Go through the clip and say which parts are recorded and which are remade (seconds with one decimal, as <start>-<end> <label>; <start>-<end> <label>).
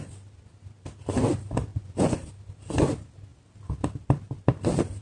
0.0-1.7 recorded; 1.7-2.3 remade; 2.3-5.0 recorded